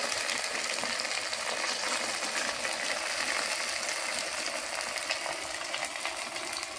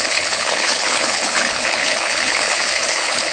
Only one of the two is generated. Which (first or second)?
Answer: second